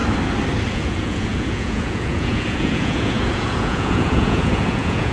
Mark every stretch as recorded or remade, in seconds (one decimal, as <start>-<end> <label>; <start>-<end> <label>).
0.0-0.7 recorded; 0.7-5.1 remade